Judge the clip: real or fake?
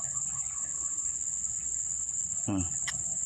fake